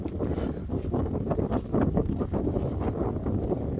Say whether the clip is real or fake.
real